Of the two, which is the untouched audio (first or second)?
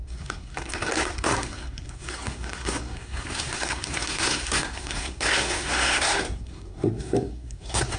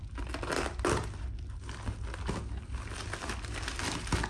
second